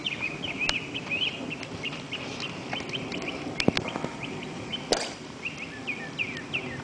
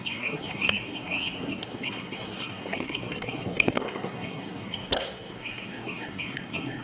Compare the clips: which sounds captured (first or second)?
first